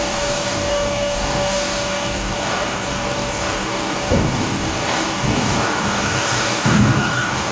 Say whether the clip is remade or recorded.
remade